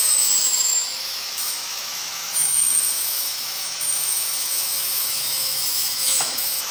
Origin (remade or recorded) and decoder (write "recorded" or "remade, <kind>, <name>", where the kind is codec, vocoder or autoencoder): remade, autoencoder, DAC-VAE